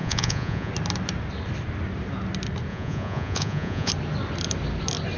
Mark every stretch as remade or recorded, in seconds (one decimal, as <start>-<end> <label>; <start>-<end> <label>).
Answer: 0.0-0.7 remade; 0.7-2.7 recorded; 2.7-3.9 remade; 3.9-5.2 recorded